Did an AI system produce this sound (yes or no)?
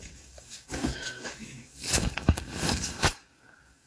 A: yes